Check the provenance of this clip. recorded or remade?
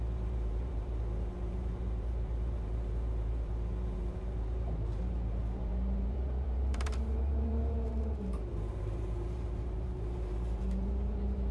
remade